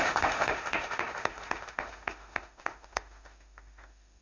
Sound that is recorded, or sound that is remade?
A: remade